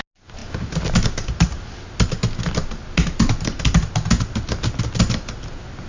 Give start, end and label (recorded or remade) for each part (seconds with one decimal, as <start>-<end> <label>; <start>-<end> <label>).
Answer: 0.0-5.9 recorded